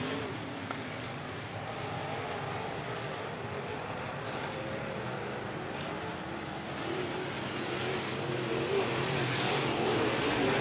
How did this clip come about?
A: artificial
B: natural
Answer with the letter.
B